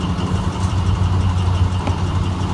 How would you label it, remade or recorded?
recorded